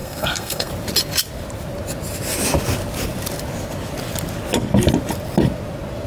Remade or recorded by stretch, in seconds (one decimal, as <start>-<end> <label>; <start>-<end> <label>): 0.0-0.7 remade; 0.7-6.1 recorded